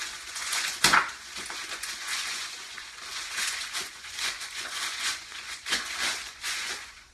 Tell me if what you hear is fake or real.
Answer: fake